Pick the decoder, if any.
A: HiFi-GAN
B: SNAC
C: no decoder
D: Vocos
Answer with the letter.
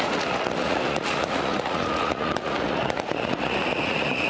D